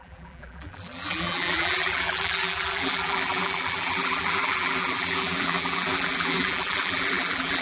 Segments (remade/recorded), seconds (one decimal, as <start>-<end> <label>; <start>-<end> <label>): 0.0-7.6 remade